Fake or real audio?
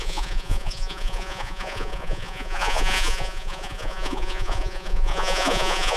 fake